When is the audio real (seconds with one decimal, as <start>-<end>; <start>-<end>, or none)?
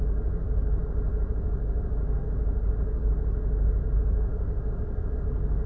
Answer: 0.0-5.7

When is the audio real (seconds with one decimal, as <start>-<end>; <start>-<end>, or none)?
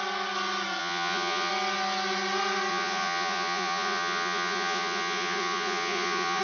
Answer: 0.0-0.8; 1.5-2.7